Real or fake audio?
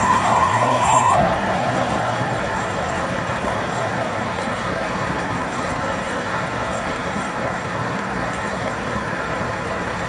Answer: fake